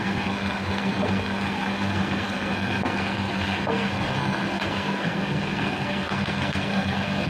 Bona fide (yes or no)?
no